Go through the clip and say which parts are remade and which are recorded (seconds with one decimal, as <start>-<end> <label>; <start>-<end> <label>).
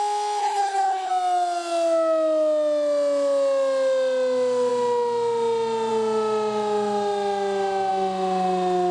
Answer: 0.0-0.4 recorded; 0.4-1.1 remade; 1.1-8.9 recorded